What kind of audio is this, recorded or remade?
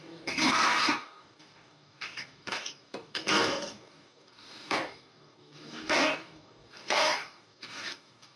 remade